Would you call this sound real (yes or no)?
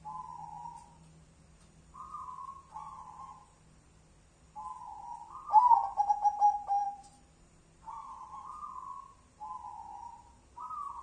yes